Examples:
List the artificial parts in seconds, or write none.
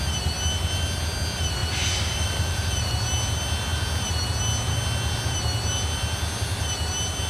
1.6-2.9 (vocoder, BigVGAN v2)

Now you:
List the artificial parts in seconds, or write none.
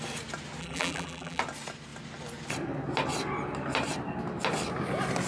0.6-1.4 (vocoder, BigVGAN v2)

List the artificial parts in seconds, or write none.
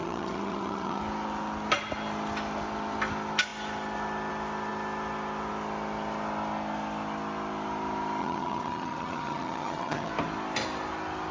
0.0-1.0 (vocoder, HiFi-GAN); 8.2-10.1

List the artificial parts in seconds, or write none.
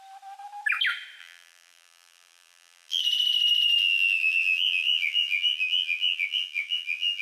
1.2-3.0 (vocoder, BigVGAN v2); 3.8-7.2